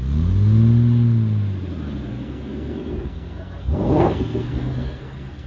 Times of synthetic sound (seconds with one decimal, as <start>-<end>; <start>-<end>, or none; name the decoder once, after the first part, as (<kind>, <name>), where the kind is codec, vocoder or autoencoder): 2.1-5.5 (codec, SNAC)